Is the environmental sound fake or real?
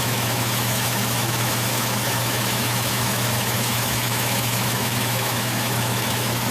fake